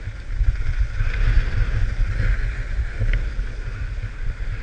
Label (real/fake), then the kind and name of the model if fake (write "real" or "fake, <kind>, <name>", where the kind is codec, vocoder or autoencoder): real